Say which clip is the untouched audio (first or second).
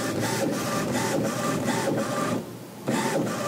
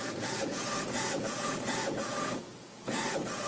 first